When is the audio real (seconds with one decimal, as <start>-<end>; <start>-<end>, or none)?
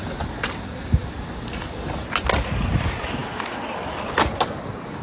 0.0-5.0